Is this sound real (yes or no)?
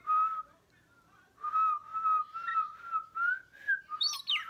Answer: yes